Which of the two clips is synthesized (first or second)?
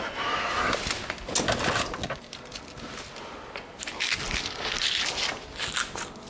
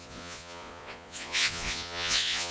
second